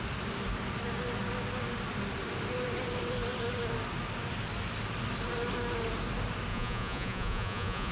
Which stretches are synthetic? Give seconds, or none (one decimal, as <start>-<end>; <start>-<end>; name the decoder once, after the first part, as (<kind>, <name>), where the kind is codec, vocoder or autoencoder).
6.5-7.9 (vocoder, Vocos)